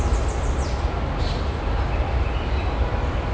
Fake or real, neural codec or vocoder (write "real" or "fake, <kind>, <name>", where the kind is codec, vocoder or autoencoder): real